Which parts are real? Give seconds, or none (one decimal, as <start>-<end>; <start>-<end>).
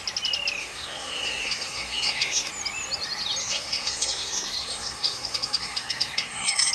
0.0-0.6; 2.5-3.4